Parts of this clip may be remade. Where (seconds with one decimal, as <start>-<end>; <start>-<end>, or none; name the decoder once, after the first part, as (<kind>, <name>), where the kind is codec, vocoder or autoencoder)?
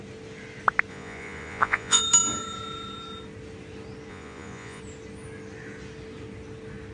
0.9-2.0 (vocoder, Vocos); 4.1-4.8